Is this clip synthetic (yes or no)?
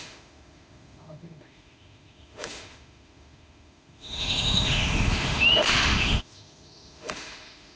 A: yes